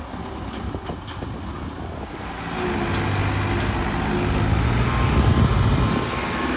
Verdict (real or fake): real